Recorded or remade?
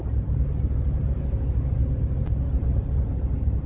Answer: recorded